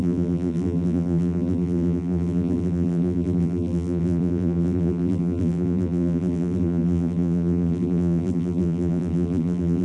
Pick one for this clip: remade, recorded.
remade